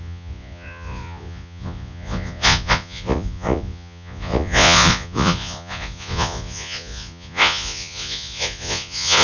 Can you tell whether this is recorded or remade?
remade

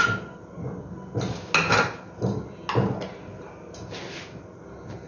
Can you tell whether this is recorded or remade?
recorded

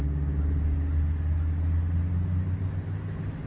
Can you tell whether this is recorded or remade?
recorded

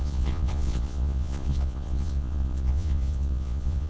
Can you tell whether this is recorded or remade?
remade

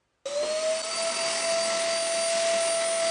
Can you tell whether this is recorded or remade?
recorded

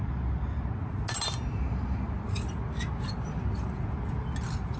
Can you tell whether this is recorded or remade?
recorded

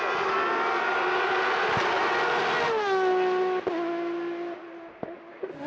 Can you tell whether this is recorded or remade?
recorded